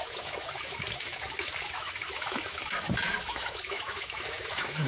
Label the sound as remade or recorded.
remade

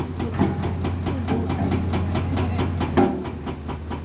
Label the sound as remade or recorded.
recorded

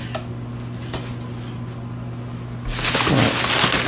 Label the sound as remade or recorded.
recorded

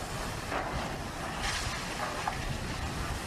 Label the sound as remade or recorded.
recorded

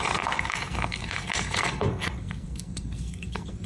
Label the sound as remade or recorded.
remade